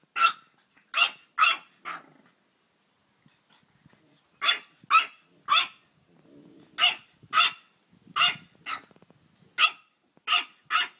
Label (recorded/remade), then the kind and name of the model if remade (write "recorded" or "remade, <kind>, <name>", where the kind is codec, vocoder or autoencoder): recorded